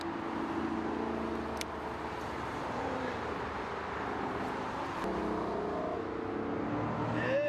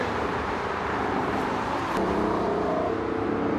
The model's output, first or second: second